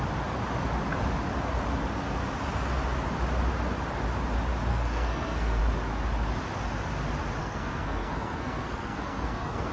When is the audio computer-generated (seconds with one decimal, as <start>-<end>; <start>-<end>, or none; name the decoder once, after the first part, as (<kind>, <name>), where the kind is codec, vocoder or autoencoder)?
4.7-5.6 (codec, SNAC); 7.4-9.7